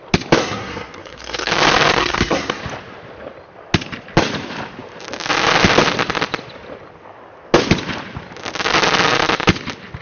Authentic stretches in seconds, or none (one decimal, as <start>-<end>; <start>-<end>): 0.0-0.4; 1.5-2.0; 2.6-10.0